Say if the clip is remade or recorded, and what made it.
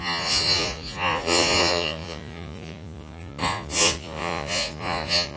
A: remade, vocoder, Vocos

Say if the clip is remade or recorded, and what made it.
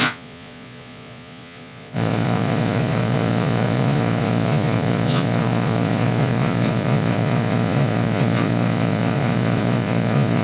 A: remade, vocoder, Vocos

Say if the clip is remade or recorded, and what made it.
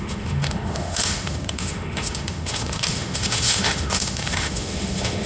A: remade, autoencoder, DAC-VAE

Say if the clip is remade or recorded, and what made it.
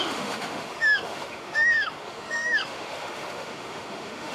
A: remade, autoencoder, DAC-VAE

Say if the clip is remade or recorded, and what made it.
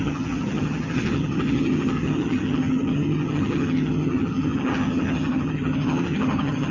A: remade, vocoder, HiFi-GAN